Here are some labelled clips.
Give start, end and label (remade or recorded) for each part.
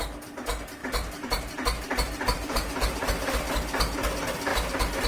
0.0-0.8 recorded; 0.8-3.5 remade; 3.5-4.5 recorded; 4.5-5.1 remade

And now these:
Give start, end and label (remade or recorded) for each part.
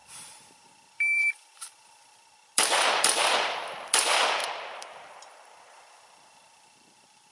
0.0-7.3 remade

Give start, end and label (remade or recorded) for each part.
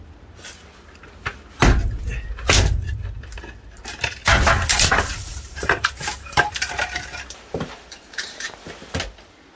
0.0-5.3 recorded; 5.3-8.6 remade; 8.6-9.6 recorded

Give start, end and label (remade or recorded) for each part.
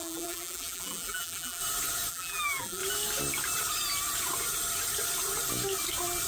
0.0-1.6 remade; 1.6-2.1 recorded; 2.1-2.8 remade; 2.8-6.3 recorded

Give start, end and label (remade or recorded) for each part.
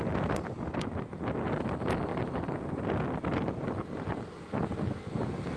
0.0-2.1 recorded; 2.1-2.8 remade; 2.8-5.6 recorded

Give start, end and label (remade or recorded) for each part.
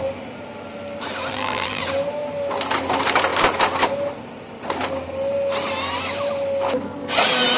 0.0-1.3 recorded; 1.3-1.8 remade; 1.8-7.6 recorded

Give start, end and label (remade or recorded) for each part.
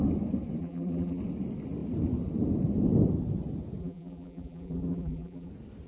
0.0-0.6 recorded; 0.6-1.2 remade; 1.2-3.8 recorded; 3.8-5.5 remade; 5.5-5.9 recorded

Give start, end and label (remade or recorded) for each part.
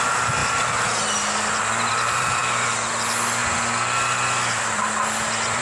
0.0-0.4 remade; 0.4-1.9 recorded; 1.9-2.4 remade; 2.4-2.9 recorded; 2.9-3.4 remade; 3.4-4.5 recorded; 4.5-5.6 remade